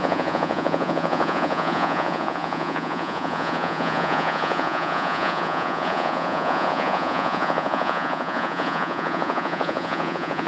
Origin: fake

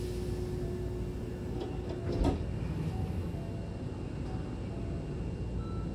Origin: real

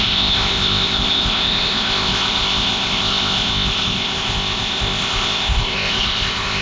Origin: fake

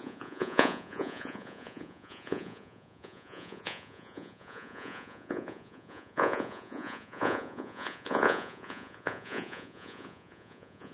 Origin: fake